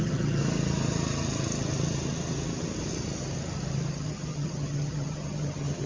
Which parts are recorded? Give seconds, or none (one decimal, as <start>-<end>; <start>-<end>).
0.4-3.9